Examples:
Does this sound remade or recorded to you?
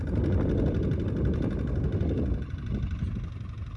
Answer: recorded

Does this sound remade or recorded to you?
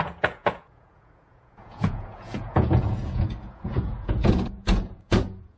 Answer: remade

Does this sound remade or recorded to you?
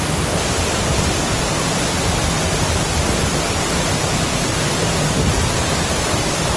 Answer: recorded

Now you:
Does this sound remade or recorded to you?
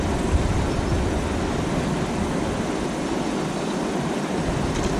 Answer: recorded